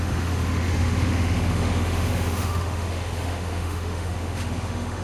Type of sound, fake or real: fake